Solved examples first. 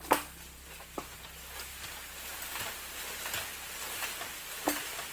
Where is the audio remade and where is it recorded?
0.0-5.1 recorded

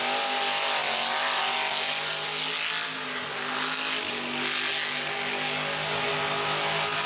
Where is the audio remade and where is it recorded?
0.0-7.1 recorded

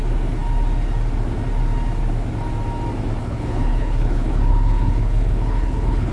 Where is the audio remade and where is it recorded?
0.0-3.2 recorded; 3.2-6.1 remade

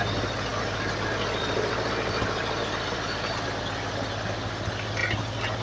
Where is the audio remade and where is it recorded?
0.0-5.6 recorded

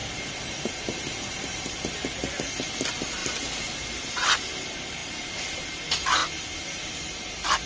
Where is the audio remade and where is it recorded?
0.0-2.3 remade; 2.3-3.2 recorded; 3.2-4.1 remade; 4.1-5.0 recorded; 5.0-5.8 remade; 5.8-6.2 recorded; 6.2-7.7 remade